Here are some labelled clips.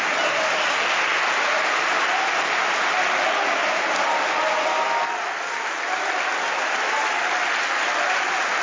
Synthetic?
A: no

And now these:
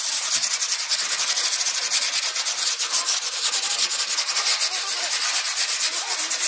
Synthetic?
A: no